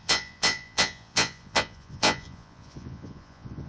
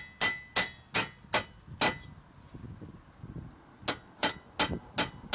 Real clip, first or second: second